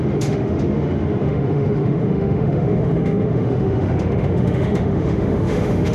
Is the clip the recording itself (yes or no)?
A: no